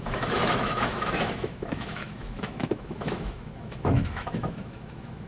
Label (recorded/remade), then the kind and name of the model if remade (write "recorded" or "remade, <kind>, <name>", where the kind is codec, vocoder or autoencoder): remade, autoencoder, DAC-VAE